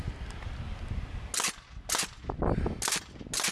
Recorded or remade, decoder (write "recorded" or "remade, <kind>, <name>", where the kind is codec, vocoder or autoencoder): recorded